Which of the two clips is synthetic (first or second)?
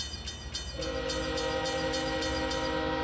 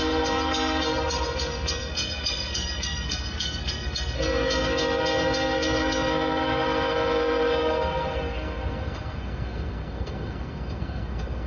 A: second